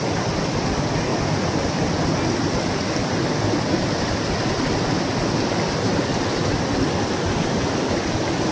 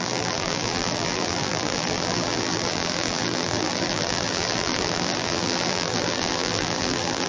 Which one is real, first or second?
first